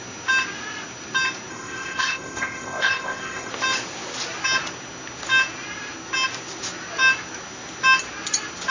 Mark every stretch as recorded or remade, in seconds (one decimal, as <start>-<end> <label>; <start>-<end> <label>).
0.0-1.5 recorded; 1.5-3.5 remade; 3.5-8.7 recorded